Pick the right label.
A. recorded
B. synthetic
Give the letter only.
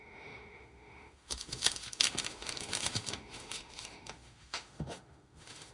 B